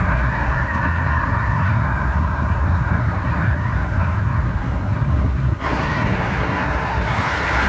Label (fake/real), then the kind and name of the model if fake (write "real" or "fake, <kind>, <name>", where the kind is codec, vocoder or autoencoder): fake, codec, SNAC